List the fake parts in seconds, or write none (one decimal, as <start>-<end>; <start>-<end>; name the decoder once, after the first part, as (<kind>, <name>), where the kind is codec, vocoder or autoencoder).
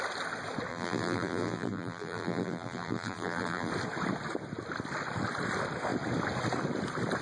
0.7-3.7 (vocoder, BigVGAN v2)